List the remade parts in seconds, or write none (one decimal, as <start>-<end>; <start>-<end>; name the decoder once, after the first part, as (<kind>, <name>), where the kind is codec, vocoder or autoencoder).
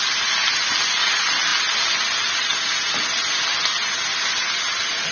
none